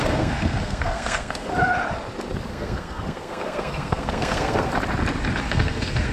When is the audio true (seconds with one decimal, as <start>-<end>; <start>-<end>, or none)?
1.5-2.5; 4.7-5.4